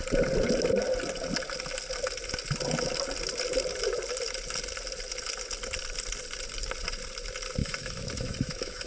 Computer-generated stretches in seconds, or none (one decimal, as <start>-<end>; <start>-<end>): 7.6-8.9

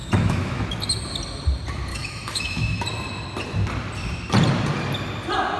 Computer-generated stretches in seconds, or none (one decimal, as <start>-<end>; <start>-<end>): 0.0-0.8; 1.9-2.8

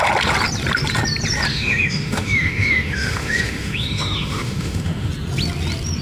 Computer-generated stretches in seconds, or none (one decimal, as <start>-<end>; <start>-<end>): 1.5-5.1

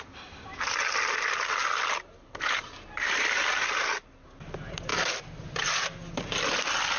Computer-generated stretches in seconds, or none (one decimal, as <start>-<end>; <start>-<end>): none

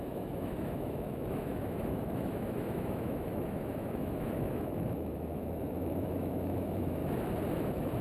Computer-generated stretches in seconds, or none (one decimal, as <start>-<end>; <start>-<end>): 0.0-7.0; 7.6-8.0

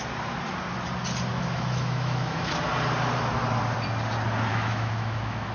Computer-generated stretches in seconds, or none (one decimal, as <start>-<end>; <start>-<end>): 1.3-2.5; 4.5-5.5

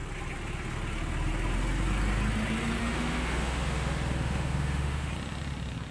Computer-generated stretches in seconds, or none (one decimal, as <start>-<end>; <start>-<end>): 2.8-5.1

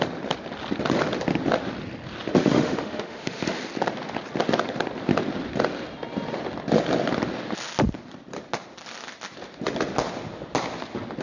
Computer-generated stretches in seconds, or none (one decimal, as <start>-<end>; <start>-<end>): 2.3-3.6